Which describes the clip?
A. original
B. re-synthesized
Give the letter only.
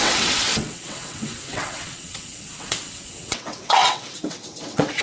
B